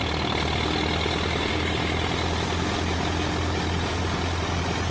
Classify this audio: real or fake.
real